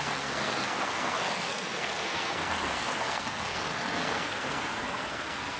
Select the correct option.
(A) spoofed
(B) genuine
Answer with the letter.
A